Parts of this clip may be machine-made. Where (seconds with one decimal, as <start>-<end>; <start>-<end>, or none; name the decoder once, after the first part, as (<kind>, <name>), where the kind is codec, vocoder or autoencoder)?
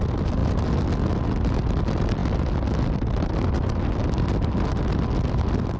none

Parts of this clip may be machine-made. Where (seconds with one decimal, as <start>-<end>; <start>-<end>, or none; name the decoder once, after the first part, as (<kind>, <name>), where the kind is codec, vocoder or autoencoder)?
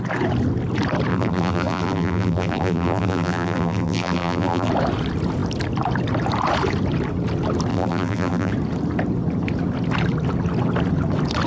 1.1-4.7 (vocoder, BigVGAN v2); 7.7-8.5